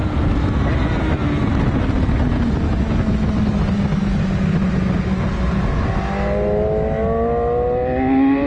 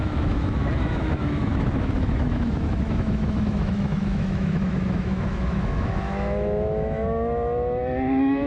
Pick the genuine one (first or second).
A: first